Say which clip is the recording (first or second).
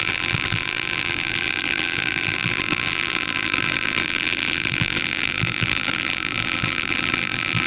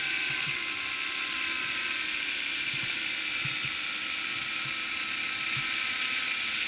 second